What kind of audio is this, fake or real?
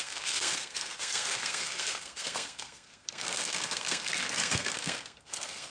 fake